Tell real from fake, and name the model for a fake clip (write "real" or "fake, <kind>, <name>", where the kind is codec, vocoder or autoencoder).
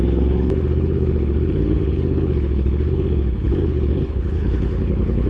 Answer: fake, codec, HILCodec